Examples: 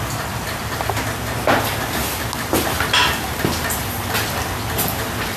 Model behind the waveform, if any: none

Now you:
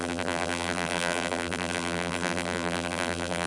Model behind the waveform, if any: vocoder, BigVGAN v2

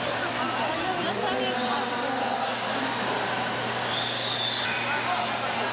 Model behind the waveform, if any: none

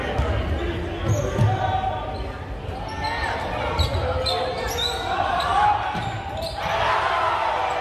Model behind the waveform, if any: none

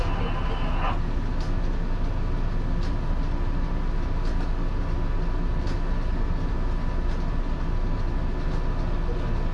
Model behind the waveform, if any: none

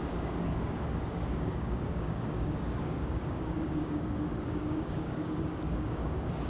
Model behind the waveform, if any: codec, DAC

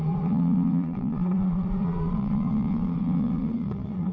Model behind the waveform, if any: vocoder, Vocos